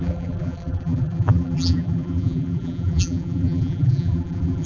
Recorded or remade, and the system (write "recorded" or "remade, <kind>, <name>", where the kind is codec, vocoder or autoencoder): remade, vocoder, BigVGAN v2